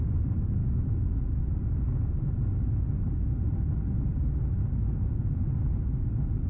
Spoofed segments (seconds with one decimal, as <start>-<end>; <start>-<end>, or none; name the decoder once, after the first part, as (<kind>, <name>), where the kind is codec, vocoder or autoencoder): 0.6-1.4 (vocoder, Vocos); 4.8-5.4